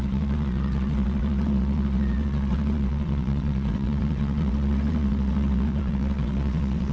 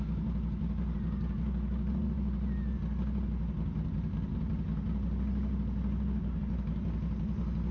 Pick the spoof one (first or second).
first